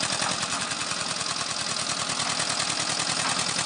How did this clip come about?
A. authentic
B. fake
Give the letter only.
A